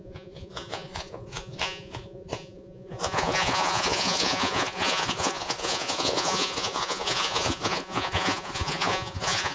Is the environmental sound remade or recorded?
remade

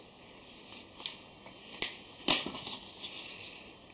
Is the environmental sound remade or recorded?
recorded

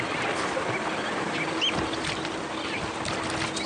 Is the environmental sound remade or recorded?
recorded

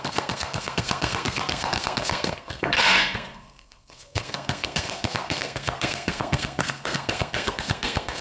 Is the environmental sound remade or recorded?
remade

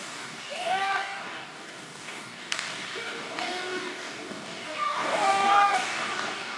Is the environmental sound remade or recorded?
remade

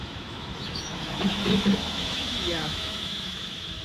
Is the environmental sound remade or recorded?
remade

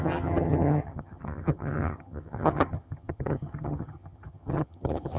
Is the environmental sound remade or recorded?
remade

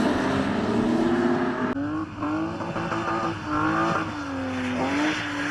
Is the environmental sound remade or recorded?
recorded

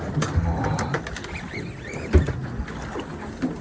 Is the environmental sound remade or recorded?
recorded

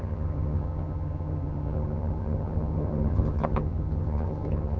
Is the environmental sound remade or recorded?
remade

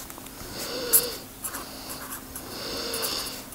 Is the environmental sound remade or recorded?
recorded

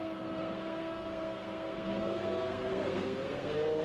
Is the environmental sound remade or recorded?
remade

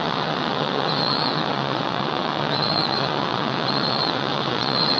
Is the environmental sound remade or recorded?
remade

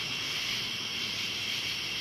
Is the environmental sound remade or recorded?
recorded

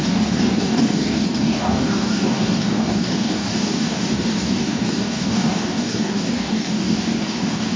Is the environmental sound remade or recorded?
remade